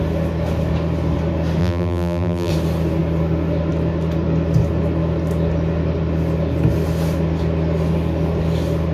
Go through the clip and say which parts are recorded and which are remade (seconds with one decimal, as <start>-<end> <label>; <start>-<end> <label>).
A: 0.0-1.6 recorded; 1.6-2.5 remade; 2.5-8.9 recorded